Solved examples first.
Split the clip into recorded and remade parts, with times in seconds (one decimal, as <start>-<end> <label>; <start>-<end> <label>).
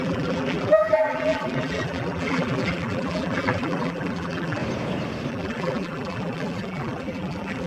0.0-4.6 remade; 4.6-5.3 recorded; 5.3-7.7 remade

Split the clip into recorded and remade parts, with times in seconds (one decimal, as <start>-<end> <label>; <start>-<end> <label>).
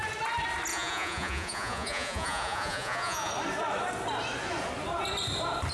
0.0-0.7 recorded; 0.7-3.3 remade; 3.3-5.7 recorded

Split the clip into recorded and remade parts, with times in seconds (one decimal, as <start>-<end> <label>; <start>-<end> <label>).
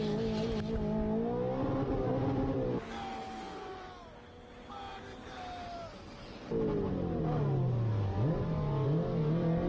0.0-9.7 recorded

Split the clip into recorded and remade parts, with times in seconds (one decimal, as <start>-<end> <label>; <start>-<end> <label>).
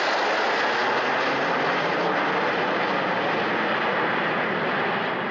0.0-5.3 recorded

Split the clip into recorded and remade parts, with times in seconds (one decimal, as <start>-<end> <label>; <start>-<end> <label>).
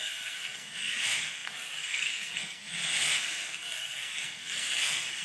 0.0-5.2 remade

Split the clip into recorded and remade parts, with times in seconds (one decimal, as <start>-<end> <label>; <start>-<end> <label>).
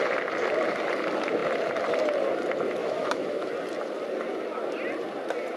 0.0-2.8 recorded; 2.8-3.5 remade; 3.5-5.6 recorded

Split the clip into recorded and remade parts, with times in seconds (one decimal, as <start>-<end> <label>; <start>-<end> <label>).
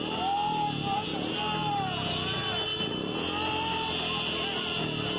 0.0-5.2 recorded